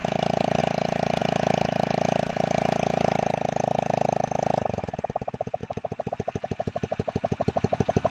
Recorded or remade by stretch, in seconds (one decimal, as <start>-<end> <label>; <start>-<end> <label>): 0.0-0.6 remade; 0.6-1.2 recorded; 1.2-2.3 remade; 2.3-5.6 recorded; 5.6-6.1 remade; 6.1-8.1 recorded